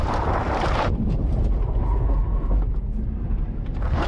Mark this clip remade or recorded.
remade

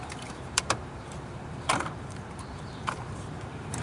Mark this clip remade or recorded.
remade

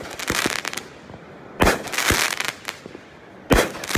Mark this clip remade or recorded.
remade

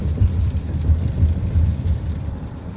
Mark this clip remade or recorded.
remade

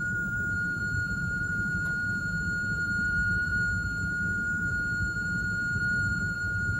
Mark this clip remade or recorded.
remade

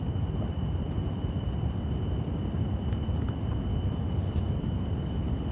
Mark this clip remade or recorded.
recorded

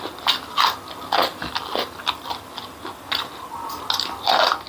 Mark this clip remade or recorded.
recorded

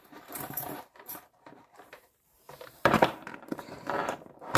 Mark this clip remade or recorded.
remade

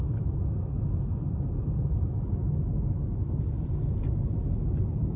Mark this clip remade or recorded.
recorded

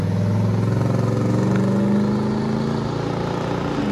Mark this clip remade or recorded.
recorded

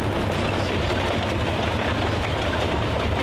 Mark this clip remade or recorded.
recorded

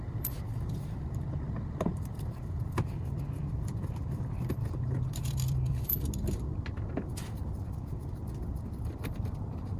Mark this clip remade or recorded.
remade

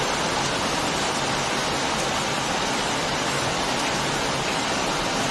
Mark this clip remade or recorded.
recorded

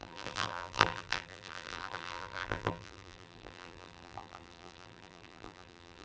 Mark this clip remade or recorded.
remade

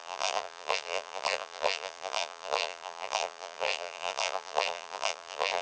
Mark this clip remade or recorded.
remade